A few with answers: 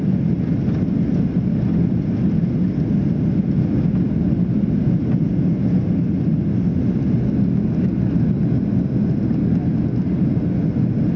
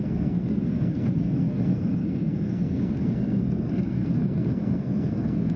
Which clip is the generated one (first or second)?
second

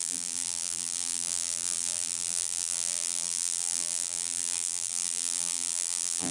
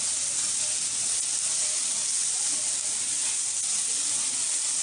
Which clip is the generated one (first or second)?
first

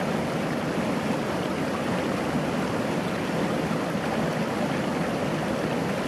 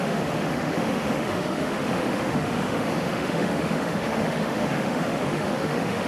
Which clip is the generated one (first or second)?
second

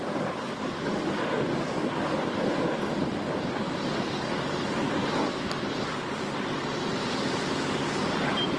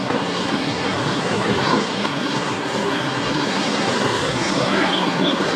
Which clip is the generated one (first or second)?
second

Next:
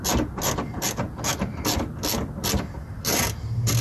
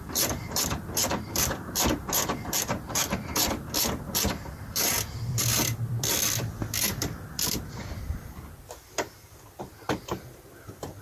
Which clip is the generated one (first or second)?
second